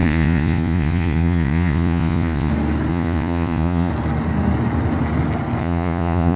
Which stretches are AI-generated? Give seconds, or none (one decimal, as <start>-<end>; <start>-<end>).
0.0-2.5; 2.9-3.9; 5.6-6.4